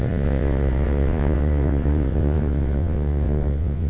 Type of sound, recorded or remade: remade